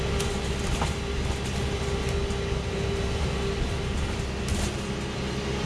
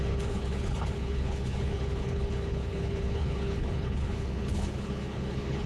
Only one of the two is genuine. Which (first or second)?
first